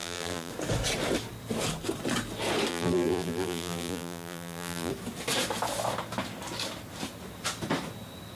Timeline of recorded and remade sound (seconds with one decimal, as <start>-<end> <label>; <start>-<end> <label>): 0.0-0.5 remade; 0.5-2.7 recorded; 2.7-4.9 remade; 4.9-8.4 recorded